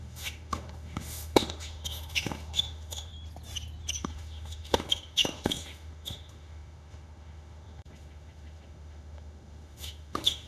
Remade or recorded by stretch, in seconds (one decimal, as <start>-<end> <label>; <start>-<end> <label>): 0.0-3.1 remade; 3.1-4.0 recorded; 4.0-10.5 remade